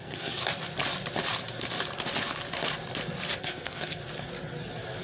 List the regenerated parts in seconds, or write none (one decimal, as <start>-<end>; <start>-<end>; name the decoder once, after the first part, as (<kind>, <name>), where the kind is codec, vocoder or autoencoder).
0.0-0.4 (codec, SNAC); 3.4-4.0